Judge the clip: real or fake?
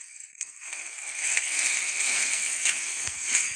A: fake